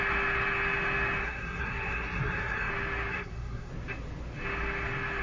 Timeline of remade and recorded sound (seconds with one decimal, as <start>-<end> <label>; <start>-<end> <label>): 0.0-1.2 recorded; 1.2-2.7 remade; 2.7-3.1 recorded; 3.1-3.7 remade; 3.7-5.2 recorded